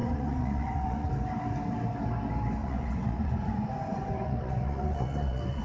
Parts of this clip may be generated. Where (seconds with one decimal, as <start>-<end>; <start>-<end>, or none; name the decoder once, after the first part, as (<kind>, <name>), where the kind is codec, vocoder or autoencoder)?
0.0-1.1 (vocoder, Vocos); 2.6-5.6